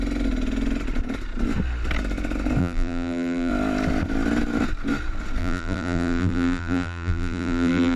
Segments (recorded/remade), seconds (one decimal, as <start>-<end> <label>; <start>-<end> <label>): 0.0-2.6 recorded; 2.6-3.5 remade; 3.5-5.4 recorded; 5.4-8.0 remade

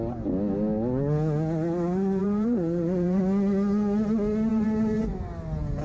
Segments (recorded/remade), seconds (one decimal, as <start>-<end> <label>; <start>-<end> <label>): 0.0-2.2 recorded; 2.2-3.2 remade; 3.2-4.5 recorded; 4.5-5.0 remade; 5.0-5.8 recorded